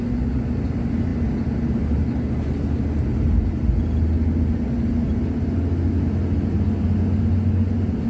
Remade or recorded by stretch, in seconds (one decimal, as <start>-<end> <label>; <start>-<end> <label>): 0.0-8.1 recorded